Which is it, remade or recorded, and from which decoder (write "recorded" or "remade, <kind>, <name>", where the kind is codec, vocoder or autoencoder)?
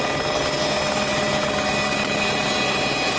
recorded